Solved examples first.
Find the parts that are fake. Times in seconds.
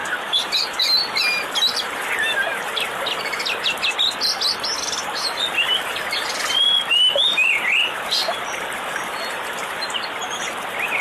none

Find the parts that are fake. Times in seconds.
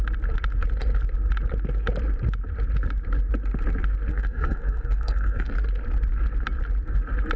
4.1-5.5 (codec, SNAC)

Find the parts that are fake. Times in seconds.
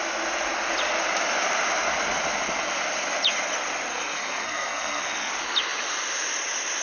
3.9-5.3 (codec, SNAC)